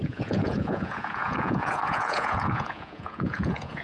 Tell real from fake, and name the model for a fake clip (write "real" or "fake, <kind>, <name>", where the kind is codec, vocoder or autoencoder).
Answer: fake, vocoder, Vocos